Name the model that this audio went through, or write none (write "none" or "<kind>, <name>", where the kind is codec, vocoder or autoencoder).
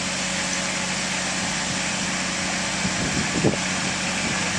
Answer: none